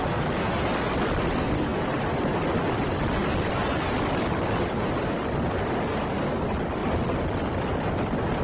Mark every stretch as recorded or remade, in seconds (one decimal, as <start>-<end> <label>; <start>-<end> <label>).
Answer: 0.0-8.4 recorded